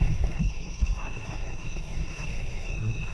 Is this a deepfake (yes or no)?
yes